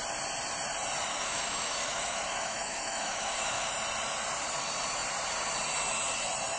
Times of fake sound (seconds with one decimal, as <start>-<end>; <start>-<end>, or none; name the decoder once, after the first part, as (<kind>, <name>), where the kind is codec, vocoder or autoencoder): 1.1-3.7 (autoencoder, DAC-VAE)